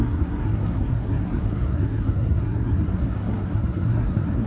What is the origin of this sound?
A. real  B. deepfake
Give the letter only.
B